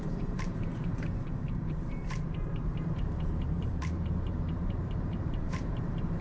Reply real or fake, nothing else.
fake